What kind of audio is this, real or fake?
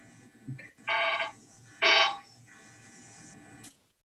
fake